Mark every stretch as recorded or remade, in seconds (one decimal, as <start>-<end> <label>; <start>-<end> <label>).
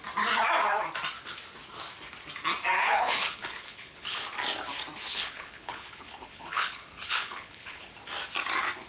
0.0-2.8 recorded; 2.8-4.2 remade; 4.2-5.1 recorded; 5.1-7.9 remade; 7.9-8.9 recorded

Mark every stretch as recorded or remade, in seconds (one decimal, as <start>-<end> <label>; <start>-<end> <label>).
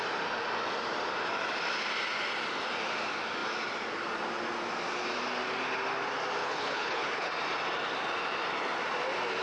0.0-6.4 recorded; 6.4-7.3 remade; 7.3-9.4 recorded